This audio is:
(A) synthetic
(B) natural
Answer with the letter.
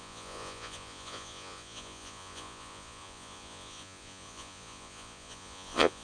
A